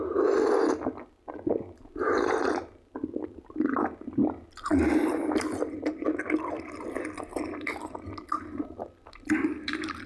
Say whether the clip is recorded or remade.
recorded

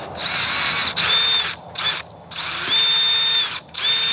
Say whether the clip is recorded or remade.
recorded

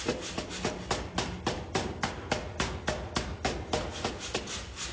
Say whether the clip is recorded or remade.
recorded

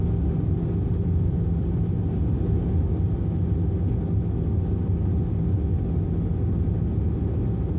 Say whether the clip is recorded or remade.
recorded